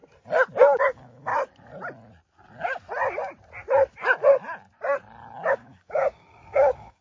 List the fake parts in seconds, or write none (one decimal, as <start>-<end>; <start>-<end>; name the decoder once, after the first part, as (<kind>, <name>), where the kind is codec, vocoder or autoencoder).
0.8-1.3 (codec, DAC); 5.5-7.0